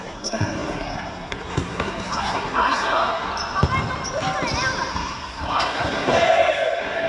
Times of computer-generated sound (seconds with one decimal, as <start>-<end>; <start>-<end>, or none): 0.0-3.3; 4.9-7.1